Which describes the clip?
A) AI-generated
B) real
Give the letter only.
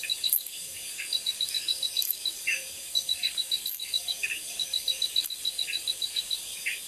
A